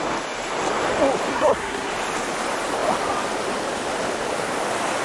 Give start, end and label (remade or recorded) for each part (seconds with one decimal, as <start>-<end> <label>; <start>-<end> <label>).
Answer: 0.0-1.3 recorded; 1.3-1.9 remade; 1.9-5.0 recorded